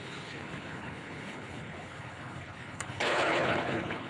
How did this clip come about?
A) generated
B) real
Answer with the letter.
A